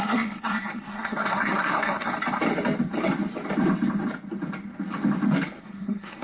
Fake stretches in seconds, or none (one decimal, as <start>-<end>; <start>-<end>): 0.0-2.1; 5.6-6.2